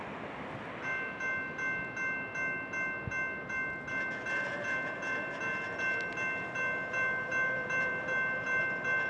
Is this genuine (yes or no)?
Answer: yes